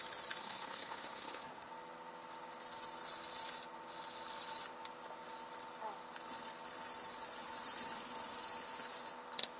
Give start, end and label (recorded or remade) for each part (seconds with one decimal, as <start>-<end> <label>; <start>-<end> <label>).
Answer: 0.0-0.4 recorded; 0.4-1.7 remade; 1.7-9.6 recorded